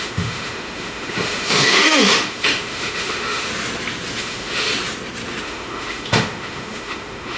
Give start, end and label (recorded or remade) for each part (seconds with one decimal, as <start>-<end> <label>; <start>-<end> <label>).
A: 0.0-3.5 remade; 3.5-4.2 recorded; 4.2-4.7 remade; 4.7-5.4 recorded; 5.4-7.4 remade

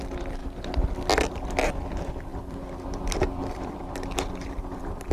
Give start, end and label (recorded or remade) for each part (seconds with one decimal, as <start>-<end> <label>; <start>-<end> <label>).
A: 0.0-0.4 remade; 0.4-1.8 recorded; 1.8-5.1 remade

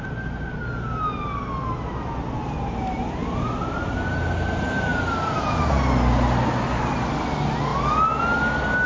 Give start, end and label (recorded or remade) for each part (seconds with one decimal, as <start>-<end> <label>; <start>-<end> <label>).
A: 0.0-8.9 recorded

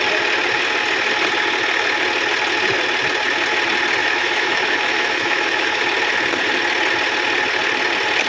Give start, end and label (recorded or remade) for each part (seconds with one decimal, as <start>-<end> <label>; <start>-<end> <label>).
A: 0.0-4.0 recorded; 4.0-5.8 remade; 5.8-8.3 recorded